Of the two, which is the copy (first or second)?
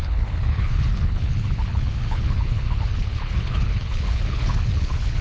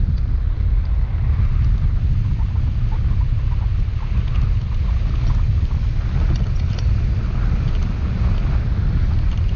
first